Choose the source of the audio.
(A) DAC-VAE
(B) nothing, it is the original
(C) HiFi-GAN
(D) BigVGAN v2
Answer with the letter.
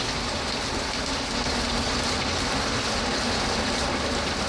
B